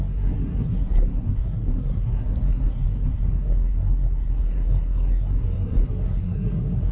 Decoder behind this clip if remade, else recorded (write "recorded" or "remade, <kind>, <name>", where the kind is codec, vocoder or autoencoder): remade, codec, SNAC